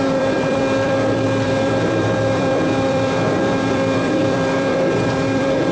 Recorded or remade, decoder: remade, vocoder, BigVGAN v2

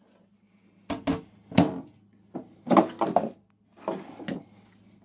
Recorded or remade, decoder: recorded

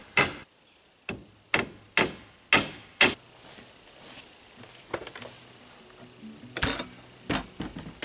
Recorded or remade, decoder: recorded